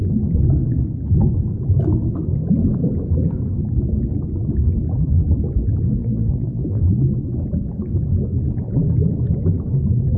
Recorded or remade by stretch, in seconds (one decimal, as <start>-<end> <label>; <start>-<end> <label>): 0.0-6.0 recorded; 6.0-6.8 remade; 6.8-10.2 recorded